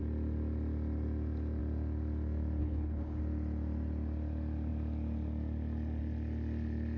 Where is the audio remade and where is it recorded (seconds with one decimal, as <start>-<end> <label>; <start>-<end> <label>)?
0.0-2.6 recorded; 2.6-3.2 remade; 3.2-7.0 recorded